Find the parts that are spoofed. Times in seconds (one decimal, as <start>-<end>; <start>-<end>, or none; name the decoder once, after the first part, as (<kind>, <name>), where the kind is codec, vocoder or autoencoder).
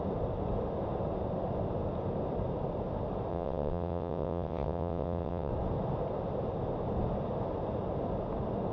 3.3-5.5 (vocoder, WaveNeXt)